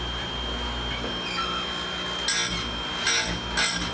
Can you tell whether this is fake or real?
real